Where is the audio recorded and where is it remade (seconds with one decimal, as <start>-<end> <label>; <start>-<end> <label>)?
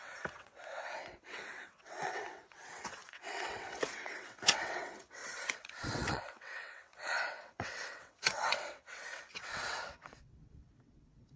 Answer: 0.0-11.4 remade